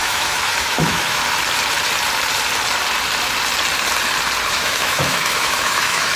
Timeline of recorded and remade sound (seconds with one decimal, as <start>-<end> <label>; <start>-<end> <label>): 0.0-1.2 remade; 1.2-4.5 recorded; 4.5-6.2 remade